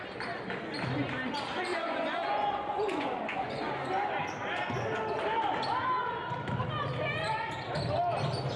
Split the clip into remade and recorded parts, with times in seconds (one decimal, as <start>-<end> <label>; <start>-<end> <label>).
0.0-1.7 recorded; 1.7-3.7 remade; 3.7-8.6 recorded

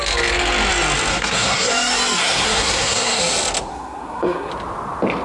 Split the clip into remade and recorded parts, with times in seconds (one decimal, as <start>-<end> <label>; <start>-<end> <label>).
0.0-1.1 recorded; 1.1-1.7 remade; 1.7-2.2 recorded; 2.2-3.2 remade; 3.2-3.7 recorded; 3.7-4.5 remade; 4.5-5.2 recorded

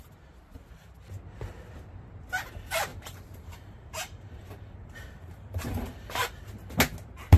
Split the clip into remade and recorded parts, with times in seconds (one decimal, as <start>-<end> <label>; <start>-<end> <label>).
0.0-2.9 recorded; 2.9-6.4 remade; 6.4-7.4 recorded